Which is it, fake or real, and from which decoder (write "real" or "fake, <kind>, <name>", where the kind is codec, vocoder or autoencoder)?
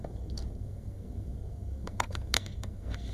fake, codec, SNAC